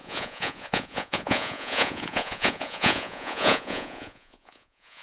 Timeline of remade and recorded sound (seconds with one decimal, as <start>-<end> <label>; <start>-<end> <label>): 0.0-5.0 remade